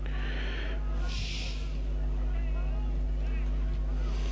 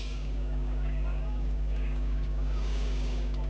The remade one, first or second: second